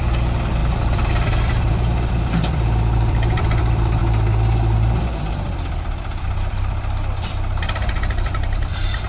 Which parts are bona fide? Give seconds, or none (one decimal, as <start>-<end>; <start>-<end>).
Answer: 4.0-5.0